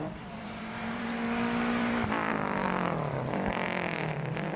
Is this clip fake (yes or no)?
yes